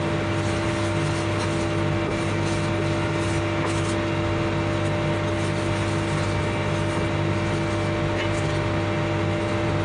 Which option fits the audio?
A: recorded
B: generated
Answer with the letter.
A